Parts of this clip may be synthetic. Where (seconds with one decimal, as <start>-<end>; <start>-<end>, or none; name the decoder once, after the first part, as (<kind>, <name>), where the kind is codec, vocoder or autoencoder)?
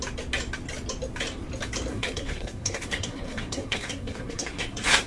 1.9-5.1 (codec, SNAC)